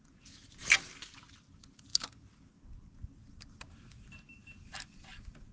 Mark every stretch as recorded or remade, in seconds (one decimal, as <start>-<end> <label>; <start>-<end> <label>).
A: 0.0-5.5 recorded